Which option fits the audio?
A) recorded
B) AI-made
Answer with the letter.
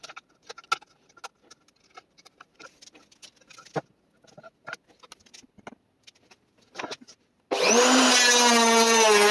A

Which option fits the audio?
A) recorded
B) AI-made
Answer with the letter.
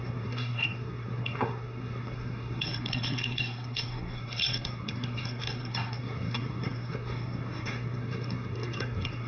B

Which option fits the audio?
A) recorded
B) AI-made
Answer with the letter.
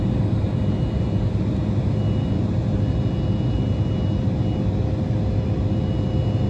A